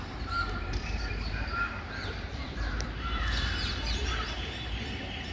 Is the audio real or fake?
fake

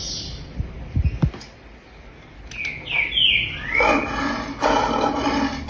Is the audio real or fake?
real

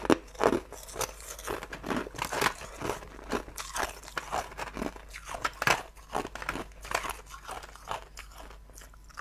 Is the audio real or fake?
real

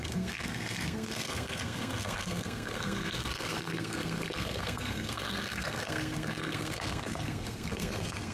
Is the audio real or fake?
fake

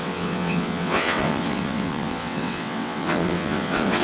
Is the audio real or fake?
fake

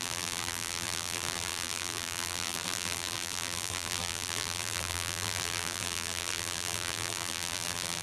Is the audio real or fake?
fake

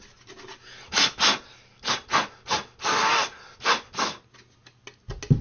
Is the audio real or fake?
real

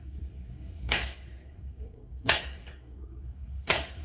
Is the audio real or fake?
fake